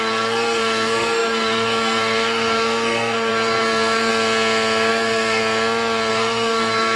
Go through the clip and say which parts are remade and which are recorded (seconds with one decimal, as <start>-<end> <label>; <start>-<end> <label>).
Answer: 0.0-4.1 remade; 4.1-4.9 recorded; 4.9-5.4 remade; 5.4-6.1 recorded; 6.1-7.0 remade